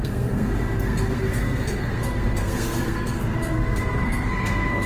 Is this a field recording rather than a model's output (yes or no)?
no